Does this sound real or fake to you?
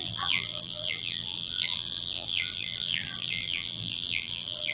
fake